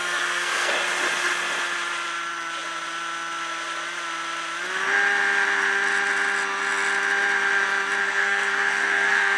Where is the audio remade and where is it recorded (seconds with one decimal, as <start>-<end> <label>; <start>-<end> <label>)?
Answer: 0.0-0.7 remade; 0.7-8.0 recorded; 8.0-9.4 remade